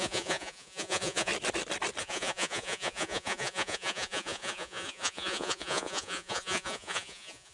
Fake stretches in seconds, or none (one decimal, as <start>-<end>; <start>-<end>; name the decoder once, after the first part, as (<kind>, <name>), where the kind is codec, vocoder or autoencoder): 0.0-1.3 (vocoder, Vocos); 2.0-7.5